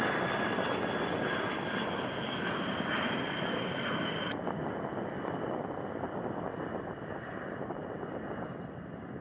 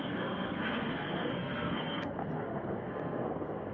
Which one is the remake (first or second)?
second